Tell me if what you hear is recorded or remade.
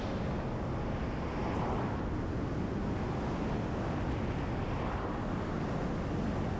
recorded